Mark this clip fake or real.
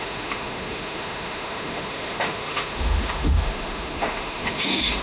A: fake